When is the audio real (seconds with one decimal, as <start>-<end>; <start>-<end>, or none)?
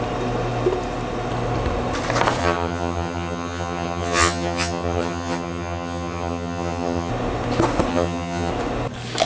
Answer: 0.0-2.4; 7.1-7.9; 8.5-9.3